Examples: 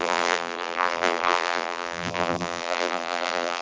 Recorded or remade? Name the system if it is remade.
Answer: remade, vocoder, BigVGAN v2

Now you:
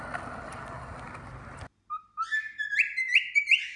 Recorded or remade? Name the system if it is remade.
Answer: recorded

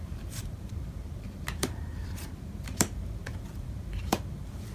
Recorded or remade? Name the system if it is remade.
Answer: remade, vocoder, BigVGAN v2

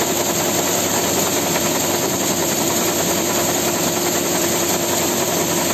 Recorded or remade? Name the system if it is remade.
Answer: remade, vocoder, BigVGAN v2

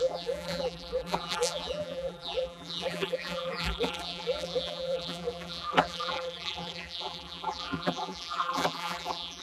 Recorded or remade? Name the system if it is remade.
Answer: remade, vocoder, BigVGAN v2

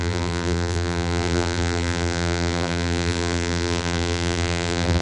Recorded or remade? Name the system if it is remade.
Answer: remade, vocoder, BigVGAN v2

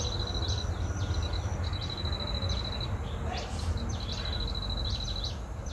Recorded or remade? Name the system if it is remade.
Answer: recorded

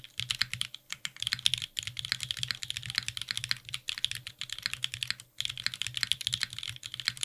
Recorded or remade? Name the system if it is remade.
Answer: recorded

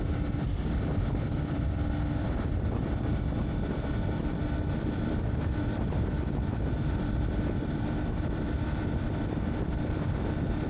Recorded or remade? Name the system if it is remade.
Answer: remade, vocoder, BigVGAN v2